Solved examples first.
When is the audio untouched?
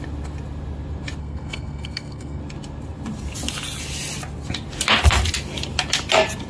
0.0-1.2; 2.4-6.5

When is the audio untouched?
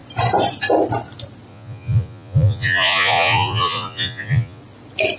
0.0-1.5; 4.6-5.2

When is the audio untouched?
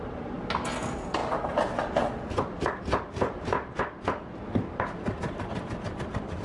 0.0-1.2; 3.8-6.4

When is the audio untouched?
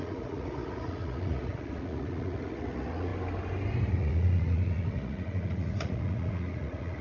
3.1-3.9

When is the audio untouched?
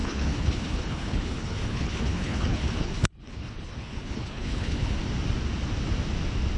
5.0-6.6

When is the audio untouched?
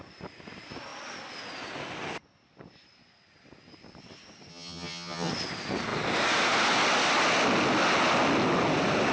0.0-4.5; 5.3-9.1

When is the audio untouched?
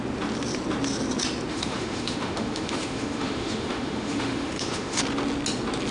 0.0-1.5; 5.0-5.9